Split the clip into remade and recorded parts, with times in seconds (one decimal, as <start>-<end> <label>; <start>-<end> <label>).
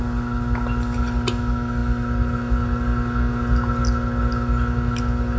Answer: 0.0-5.4 recorded